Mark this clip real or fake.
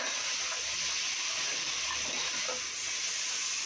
real